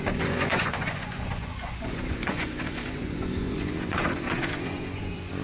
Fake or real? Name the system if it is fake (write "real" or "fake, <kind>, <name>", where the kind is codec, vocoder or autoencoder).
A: fake, vocoder, Vocos